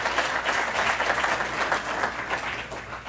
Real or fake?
real